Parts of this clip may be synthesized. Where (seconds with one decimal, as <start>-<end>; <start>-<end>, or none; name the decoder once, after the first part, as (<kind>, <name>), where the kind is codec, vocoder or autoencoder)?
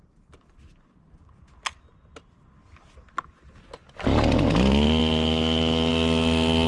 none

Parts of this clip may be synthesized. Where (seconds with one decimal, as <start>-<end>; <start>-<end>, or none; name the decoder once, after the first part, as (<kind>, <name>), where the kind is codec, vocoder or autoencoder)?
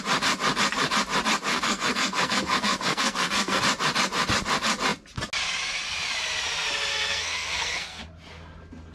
1.5-3.6 (codec, SNAC); 6.9-8.0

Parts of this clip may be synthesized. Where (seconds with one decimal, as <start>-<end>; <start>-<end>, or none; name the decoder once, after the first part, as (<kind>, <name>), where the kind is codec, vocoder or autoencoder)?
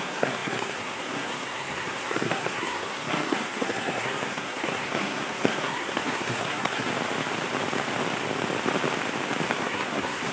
0.0-6.9 (codec, SNAC); 9.5-10.3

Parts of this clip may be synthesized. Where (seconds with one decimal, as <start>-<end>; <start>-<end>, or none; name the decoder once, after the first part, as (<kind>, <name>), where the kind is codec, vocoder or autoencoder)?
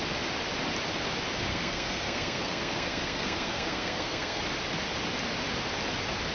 1.5-4.4 (codec, SNAC)